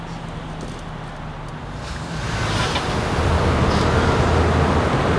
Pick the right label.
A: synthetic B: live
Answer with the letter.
B